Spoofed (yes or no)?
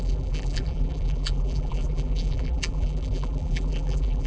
yes